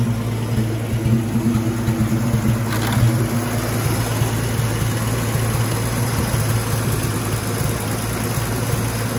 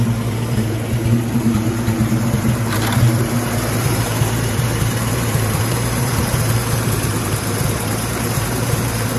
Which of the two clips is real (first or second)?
first